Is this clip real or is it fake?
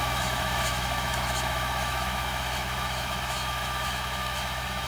fake